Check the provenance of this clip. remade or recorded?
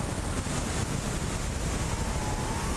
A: recorded